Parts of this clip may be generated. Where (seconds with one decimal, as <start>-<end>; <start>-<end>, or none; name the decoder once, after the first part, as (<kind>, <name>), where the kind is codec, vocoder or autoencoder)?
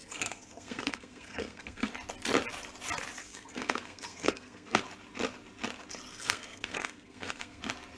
0.0-1.9 (codec, SNAC); 3.2-4.8; 6.1-7.6